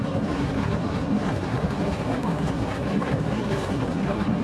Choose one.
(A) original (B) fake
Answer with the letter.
B